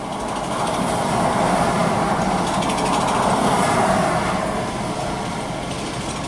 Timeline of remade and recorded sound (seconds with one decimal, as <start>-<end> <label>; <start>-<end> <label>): 0.0-6.3 recorded